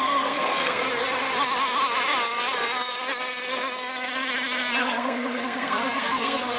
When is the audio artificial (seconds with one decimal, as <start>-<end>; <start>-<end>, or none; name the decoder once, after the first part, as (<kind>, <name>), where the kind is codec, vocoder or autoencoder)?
0.0-0.8 (codec, SNAC); 4.8-6.6